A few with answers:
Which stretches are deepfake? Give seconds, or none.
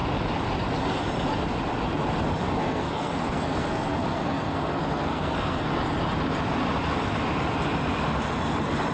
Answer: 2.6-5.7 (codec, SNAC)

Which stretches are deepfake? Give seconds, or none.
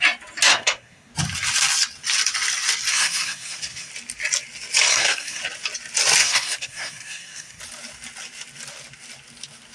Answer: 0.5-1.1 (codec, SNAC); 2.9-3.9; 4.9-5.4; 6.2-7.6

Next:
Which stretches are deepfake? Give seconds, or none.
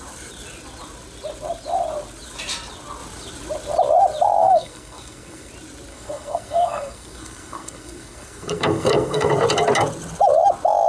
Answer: 4.4-5.5 (codec, SNAC); 5.9-9.3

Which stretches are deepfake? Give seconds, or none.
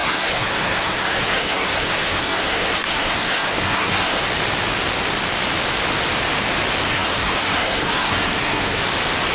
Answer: 0.0-4.2 (codec, SNAC); 6.9-8.8